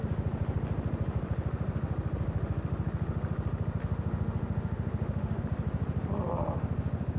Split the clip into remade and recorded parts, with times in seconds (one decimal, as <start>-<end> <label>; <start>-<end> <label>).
0.0-3.8 recorded; 3.8-5.4 remade; 5.4-7.2 recorded